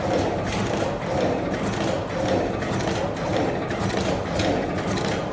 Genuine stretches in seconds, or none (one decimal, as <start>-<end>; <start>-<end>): 0.0-5.3